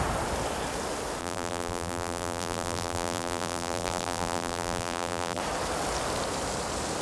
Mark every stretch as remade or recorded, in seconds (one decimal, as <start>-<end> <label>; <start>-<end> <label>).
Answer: 0.0-1.2 recorded; 1.2-5.4 remade; 5.4-7.0 recorded